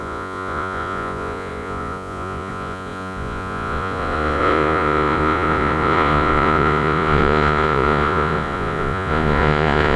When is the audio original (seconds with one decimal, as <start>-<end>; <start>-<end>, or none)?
none